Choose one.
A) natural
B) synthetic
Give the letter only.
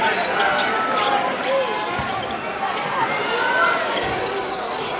A